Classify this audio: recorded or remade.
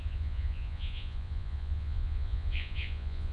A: remade